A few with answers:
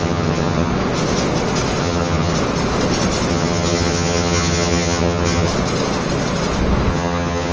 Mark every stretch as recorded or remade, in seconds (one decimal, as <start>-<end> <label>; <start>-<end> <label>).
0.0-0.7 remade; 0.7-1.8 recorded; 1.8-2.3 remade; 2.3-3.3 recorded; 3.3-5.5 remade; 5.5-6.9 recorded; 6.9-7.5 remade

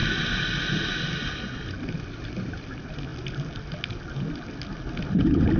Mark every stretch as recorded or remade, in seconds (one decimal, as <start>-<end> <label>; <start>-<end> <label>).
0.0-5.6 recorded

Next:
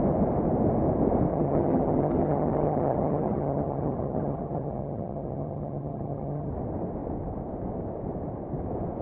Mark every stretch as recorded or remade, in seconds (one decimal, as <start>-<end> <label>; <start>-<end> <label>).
0.0-1.3 recorded; 1.3-6.5 remade; 6.5-9.0 recorded

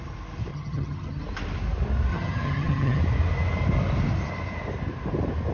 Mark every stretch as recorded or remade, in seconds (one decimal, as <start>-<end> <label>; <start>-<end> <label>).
0.0-0.5 recorded; 0.5-1.2 remade; 1.2-2.1 recorded; 2.1-3.0 remade; 3.0-5.5 recorded

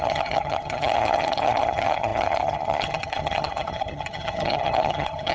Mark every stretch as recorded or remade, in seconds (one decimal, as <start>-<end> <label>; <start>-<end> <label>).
0.0-5.3 remade

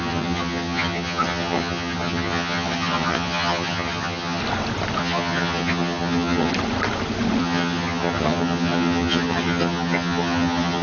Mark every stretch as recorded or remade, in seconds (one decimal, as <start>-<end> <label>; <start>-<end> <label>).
0.0-4.4 remade; 4.4-5.0 recorded; 5.0-6.5 remade; 6.5-7.4 recorded; 7.4-10.8 remade

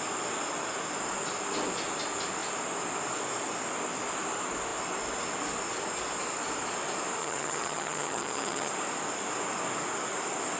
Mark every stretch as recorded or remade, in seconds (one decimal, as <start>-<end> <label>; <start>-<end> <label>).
0.0-7.2 recorded; 7.2-8.7 remade; 8.7-10.6 recorded